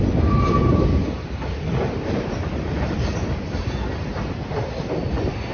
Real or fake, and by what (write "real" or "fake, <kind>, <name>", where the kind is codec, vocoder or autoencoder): real